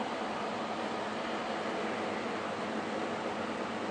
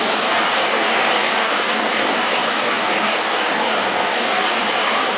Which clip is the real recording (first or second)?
first